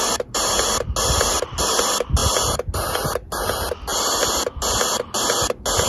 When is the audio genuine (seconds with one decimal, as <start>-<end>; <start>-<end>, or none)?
0.0-5.9